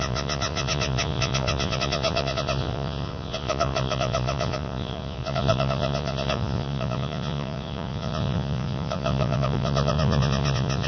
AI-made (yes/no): yes